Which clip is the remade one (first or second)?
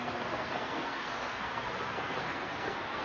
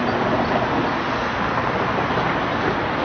first